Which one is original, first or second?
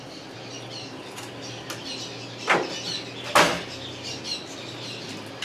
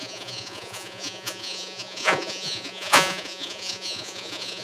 first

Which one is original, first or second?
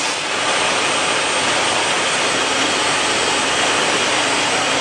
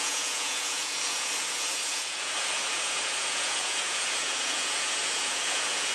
first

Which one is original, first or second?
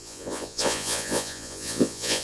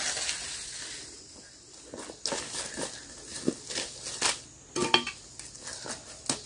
second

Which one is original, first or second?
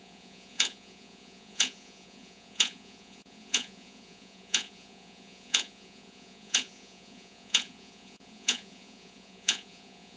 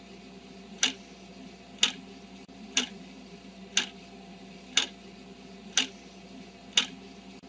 second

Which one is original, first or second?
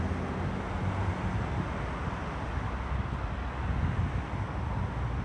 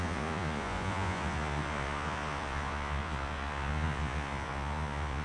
first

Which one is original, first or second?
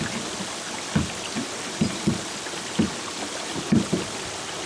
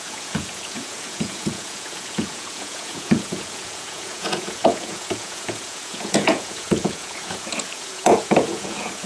first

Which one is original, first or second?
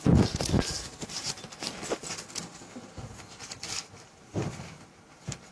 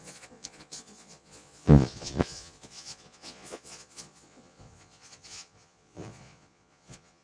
first